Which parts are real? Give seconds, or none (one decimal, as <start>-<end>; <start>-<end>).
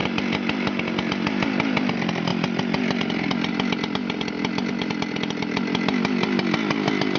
0.0-7.2